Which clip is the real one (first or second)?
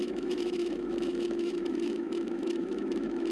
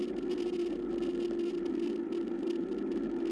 second